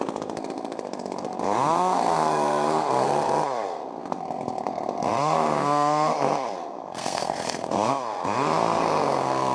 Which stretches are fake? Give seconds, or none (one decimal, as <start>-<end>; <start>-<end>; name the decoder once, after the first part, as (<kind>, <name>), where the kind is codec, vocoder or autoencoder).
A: 0.0-9.5 (codec, SNAC)